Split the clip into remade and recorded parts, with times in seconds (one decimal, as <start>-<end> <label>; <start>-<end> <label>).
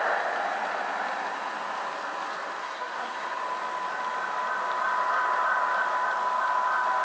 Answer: 0.0-2.6 recorded; 2.6-3.4 remade; 3.4-7.0 recorded